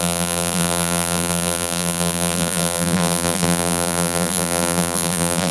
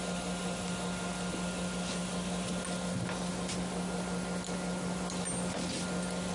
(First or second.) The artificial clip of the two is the first